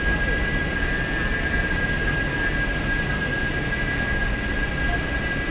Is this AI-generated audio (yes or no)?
no